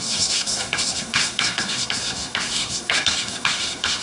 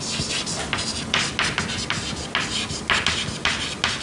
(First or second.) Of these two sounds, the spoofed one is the first